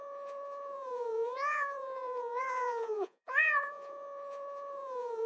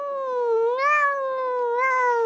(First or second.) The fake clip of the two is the first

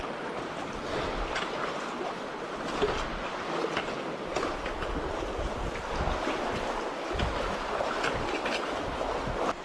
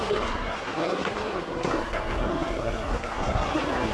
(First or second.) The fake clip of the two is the second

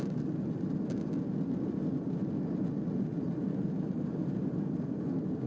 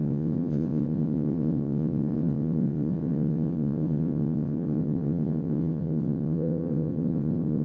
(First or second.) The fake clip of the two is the second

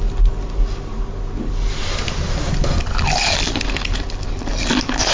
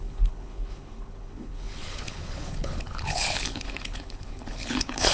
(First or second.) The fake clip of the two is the second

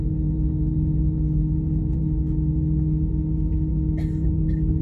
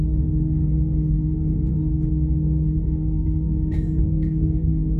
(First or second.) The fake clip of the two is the second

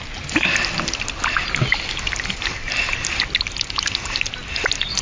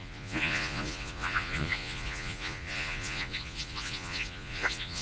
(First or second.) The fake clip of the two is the second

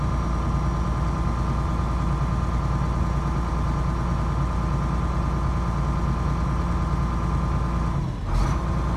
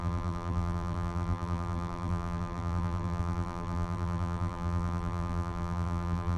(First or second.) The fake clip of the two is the second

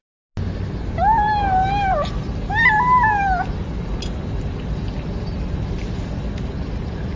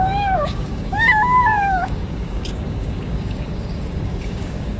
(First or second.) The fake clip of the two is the second